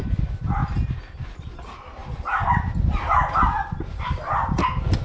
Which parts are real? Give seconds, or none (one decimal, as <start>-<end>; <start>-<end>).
0.0-5.0